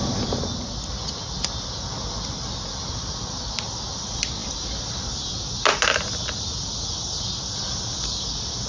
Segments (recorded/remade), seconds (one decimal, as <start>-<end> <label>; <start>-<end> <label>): 0.0-8.7 recorded